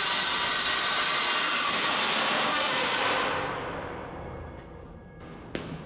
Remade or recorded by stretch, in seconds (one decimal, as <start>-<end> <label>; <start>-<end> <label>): 0.0-5.9 recorded